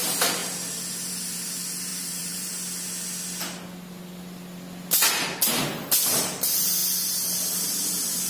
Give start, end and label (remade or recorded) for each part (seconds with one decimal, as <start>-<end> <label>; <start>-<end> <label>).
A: 0.0-1.9 recorded; 1.9-2.5 remade; 2.5-8.3 recorded

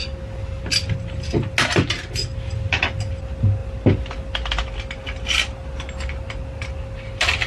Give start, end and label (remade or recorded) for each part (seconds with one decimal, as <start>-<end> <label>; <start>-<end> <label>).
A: 0.0-0.6 remade; 0.6-7.5 recorded

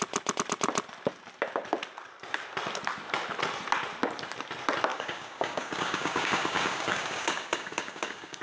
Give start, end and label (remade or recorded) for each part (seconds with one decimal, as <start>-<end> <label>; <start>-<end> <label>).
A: 0.0-4.9 recorded; 4.9-8.4 remade

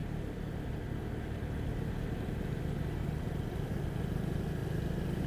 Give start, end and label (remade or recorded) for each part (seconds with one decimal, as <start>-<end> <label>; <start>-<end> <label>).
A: 0.0-5.3 recorded

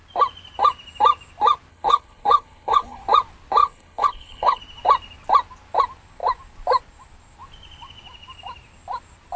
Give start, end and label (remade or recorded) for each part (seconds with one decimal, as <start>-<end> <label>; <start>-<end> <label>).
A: 0.0-1.7 recorded; 1.7-3.0 remade; 3.0-3.6 recorded; 3.6-4.6 remade; 4.6-9.4 recorded

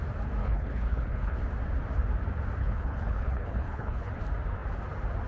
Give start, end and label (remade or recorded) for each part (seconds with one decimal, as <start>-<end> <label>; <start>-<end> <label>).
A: 0.0-0.4 recorded; 0.4-1.4 remade; 1.4-2.6 recorded; 2.6-4.1 remade; 4.1-5.3 recorded

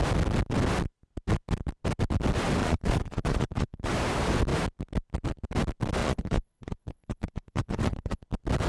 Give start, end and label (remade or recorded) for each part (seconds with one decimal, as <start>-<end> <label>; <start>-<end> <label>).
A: 0.0-2.6 recorded; 2.6-3.9 remade; 3.9-6.0 recorded; 6.0-8.2 remade; 8.2-8.7 recorded

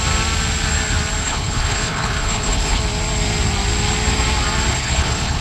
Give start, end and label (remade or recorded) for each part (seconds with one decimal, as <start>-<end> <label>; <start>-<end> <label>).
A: 0.0-1.2 recorded; 1.2-2.8 remade; 2.8-4.7 recorded; 4.7-5.4 remade